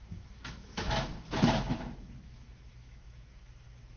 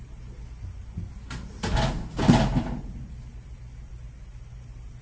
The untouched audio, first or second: second